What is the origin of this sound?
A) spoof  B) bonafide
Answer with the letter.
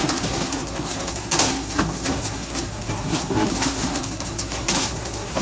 A